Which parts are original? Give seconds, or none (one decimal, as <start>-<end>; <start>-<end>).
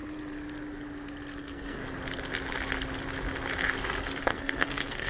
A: 0.0-1.4; 1.8-4.2